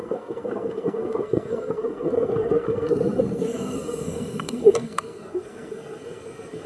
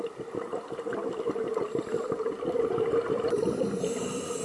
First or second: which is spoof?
first